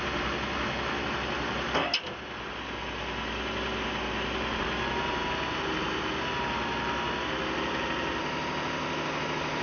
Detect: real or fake real